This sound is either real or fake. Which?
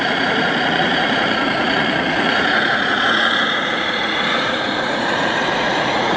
fake